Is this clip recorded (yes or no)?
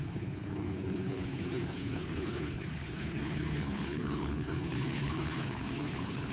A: no